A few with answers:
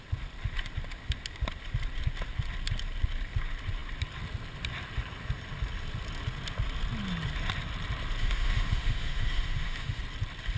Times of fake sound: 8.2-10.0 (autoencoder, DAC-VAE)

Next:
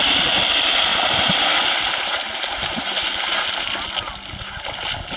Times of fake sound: none

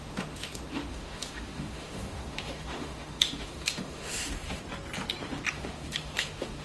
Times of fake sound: 0.0-4.6 (autoencoder, DAC-VAE); 5.5-6.6

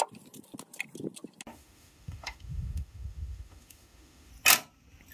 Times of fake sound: 1.5-4.3 (autoencoder, DAC-VAE)

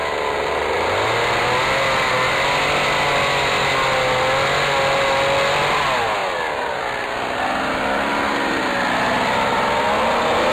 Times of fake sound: none

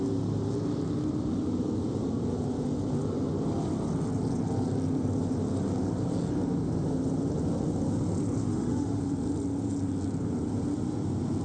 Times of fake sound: 8.4-9.0 (autoencoder, DAC-VAE)

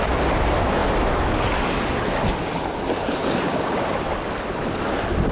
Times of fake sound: none